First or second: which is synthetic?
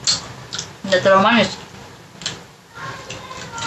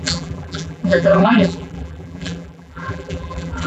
second